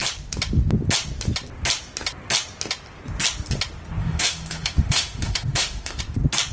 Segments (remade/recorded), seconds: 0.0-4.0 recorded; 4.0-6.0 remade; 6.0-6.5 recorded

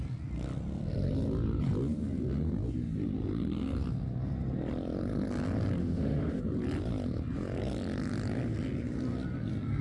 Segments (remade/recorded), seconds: 0.0-5.8 recorded; 5.8-6.4 remade; 6.4-9.8 recorded

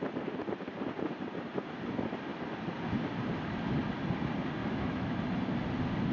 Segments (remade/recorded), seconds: 0.0-4.6 recorded; 4.6-5.2 remade; 5.2-6.1 recorded

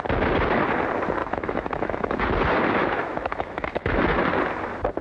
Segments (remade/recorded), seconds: 0.0-1.2 recorded; 1.2-2.2 remade; 2.2-2.8 recorded; 2.8-4.0 remade; 4.0-5.0 recorded

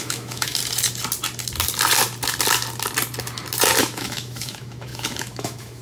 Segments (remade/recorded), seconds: 0.0-0.6 remade; 0.6-3.8 recorded; 3.8-5.8 remade